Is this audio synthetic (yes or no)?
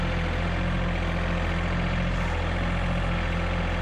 no